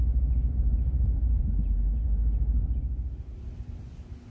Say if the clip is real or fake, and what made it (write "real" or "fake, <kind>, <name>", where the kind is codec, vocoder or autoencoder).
fake, vocoder, BigVGAN v2